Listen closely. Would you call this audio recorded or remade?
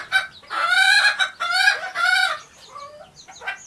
recorded